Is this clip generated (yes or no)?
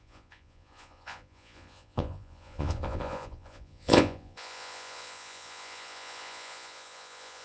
yes